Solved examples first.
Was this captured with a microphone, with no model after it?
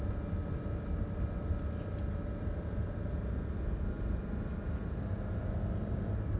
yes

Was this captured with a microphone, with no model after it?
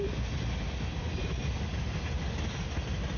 yes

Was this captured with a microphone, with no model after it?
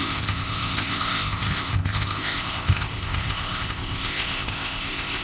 no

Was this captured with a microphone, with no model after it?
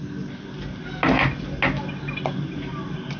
yes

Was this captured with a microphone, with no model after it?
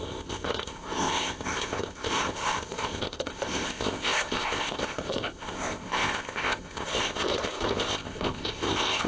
no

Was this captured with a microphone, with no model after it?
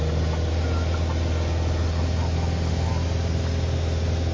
yes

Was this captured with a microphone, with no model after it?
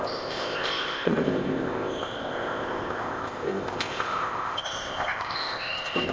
no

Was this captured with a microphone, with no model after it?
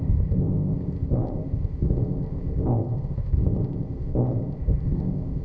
no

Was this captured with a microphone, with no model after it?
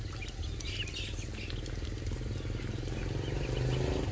yes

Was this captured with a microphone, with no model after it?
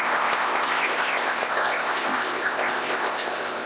no